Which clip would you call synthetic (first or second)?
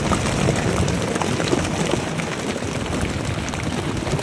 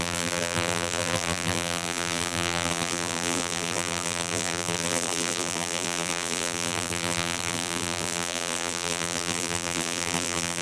second